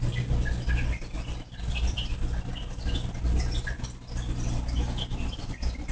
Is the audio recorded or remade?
recorded